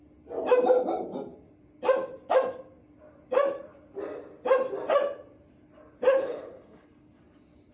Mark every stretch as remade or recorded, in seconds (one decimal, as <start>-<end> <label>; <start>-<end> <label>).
0.0-6.1 recorded; 6.1-7.2 remade; 7.2-7.7 recorded